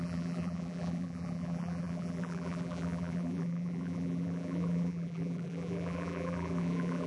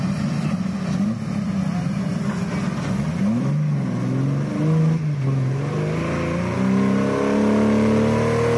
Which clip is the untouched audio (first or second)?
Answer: second